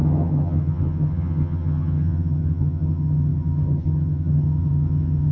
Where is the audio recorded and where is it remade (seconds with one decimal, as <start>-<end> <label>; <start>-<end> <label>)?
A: 0.0-5.3 remade